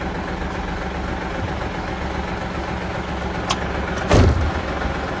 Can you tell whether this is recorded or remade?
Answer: recorded